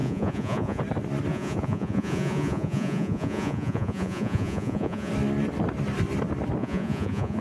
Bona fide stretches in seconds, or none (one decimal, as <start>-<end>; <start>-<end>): 0.8-1.3; 5.1-6.6